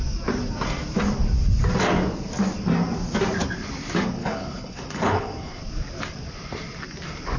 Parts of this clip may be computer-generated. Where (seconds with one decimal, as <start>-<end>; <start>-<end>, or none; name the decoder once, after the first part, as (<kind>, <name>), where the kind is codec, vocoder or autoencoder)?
4.2-5.6 (codec, HILCodec)